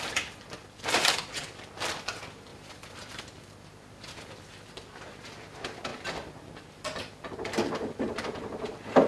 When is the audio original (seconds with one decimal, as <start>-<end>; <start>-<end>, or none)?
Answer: 0.0-2.5; 3.2-9.1